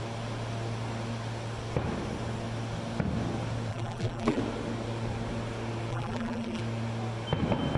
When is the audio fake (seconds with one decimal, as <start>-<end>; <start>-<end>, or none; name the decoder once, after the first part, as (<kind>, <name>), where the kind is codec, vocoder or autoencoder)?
3.7-4.4 (vocoder, BigVGAN v2); 5.9-6.6

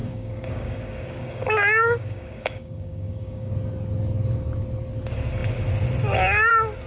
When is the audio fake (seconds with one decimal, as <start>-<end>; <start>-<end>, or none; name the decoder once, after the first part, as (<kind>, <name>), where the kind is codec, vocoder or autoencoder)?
0.0-3.5 (codec, DAC)